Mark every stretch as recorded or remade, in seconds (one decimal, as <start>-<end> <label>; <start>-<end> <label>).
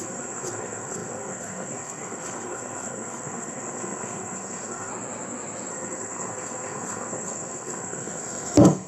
0.0-4.9 remade; 4.9-5.7 recorded; 5.7-8.9 remade